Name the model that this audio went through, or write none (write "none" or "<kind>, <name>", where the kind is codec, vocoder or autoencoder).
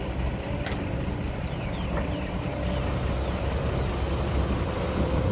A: none